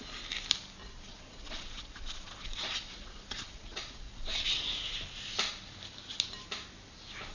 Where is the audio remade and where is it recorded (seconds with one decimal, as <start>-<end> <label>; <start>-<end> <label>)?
0.0-0.8 recorded; 0.8-4.8 remade; 4.8-7.3 recorded